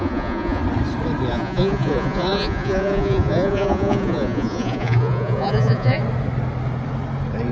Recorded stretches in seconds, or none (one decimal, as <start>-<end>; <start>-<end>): 0.6-1.3; 6.0-7.5